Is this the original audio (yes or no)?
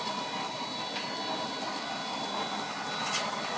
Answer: yes